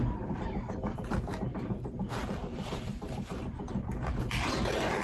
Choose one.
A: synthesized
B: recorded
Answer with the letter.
A